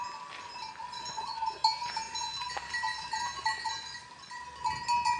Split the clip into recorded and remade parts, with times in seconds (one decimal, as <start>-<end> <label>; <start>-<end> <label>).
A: 0.0-0.8 recorded; 0.8-1.4 remade; 1.4-5.2 recorded